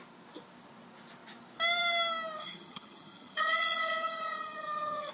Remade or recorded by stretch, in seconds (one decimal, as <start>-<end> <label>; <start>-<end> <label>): 0.0-2.4 recorded; 2.4-5.1 remade